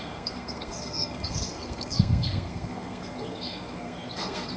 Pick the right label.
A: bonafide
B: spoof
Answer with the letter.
B